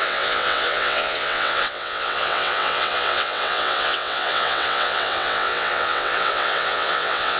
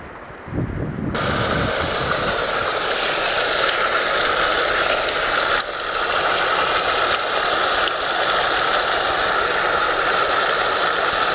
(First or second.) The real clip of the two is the second